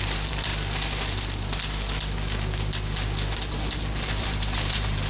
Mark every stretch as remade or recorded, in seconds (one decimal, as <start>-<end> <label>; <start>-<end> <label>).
0.0-0.5 remade; 0.5-3.5 recorded; 3.5-5.1 remade